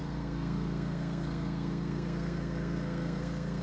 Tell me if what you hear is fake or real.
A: fake